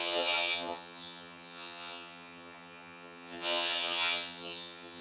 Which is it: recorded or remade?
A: remade